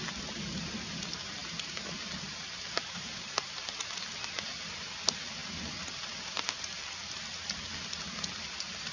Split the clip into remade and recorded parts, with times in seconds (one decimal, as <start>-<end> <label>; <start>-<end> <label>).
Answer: 0.0-5.4 recorded; 5.4-7.1 remade; 7.1-8.9 recorded